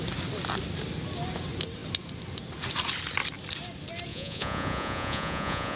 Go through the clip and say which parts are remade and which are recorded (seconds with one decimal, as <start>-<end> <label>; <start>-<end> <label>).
0.0-4.1 recorded; 4.1-5.8 remade